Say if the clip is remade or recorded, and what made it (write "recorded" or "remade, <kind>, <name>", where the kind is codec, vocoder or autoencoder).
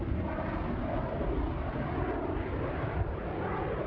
recorded